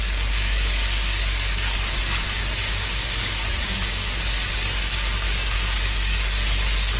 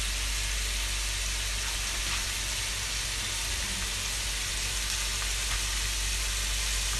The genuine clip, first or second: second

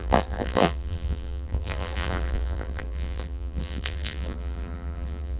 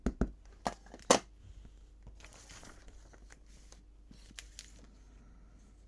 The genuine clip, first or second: second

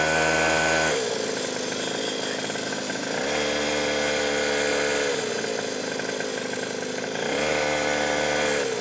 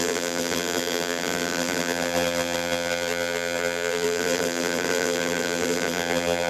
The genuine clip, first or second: first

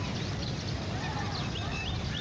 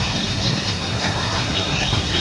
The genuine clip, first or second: first